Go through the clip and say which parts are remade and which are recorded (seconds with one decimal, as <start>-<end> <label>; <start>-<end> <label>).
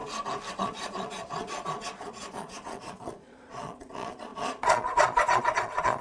0.0-0.5 recorded; 0.5-6.0 remade